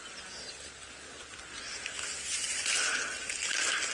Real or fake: real